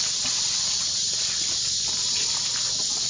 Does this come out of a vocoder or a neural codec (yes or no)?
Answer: no